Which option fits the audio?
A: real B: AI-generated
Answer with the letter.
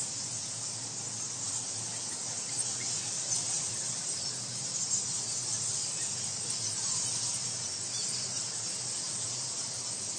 A